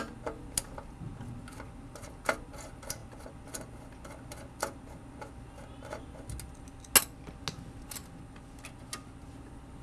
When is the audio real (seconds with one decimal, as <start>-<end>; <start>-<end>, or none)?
0.0-9.8